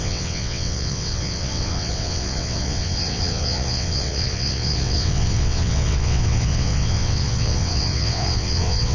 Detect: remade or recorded remade